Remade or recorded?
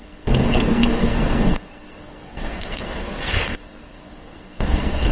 remade